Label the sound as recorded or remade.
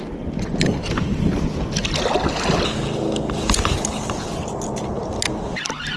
recorded